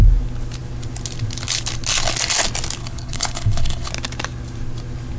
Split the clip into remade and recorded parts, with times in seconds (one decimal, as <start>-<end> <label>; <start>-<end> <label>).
0.0-2.8 recorded; 2.8-3.9 remade; 3.9-5.2 recorded